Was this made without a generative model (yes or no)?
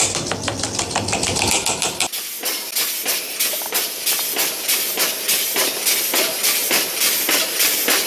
yes